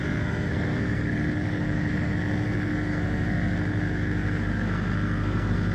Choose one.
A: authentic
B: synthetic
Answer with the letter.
B